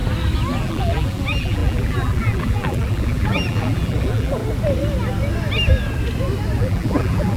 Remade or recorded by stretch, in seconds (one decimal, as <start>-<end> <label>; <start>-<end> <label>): 0.0-0.6 recorded; 0.6-4.4 remade; 4.4-6.6 recorded; 6.6-7.4 remade